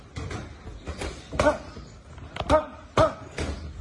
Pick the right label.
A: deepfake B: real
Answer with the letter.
B